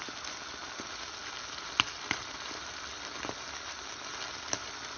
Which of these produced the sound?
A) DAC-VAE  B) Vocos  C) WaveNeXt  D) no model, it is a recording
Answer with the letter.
D